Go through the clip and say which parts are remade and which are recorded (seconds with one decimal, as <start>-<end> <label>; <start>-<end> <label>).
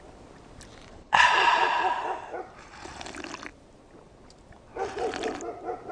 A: 0.0-0.9 recorded; 0.9-1.9 remade; 1.9-5.9 recorded